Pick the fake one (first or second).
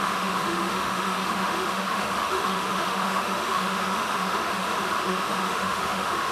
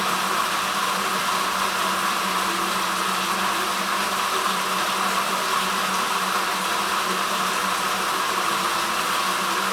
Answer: first